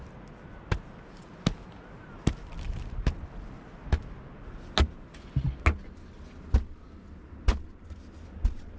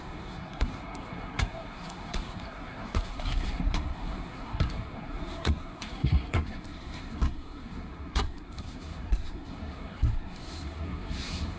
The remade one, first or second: second